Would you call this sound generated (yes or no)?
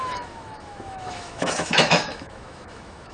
yes